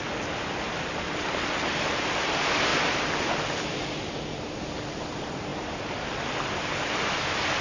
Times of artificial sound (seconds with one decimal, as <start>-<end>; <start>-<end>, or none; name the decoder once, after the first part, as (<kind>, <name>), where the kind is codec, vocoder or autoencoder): none

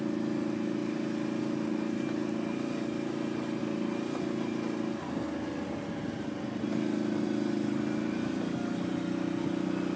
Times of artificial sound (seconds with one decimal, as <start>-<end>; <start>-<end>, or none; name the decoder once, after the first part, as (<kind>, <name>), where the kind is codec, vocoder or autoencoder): none

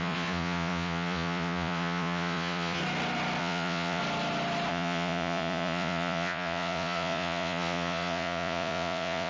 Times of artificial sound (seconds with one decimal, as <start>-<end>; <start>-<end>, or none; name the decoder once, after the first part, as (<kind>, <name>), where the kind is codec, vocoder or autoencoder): 0.0-2.8 (vocoder, Vocos); 3.4-4.0; 4.7-9.3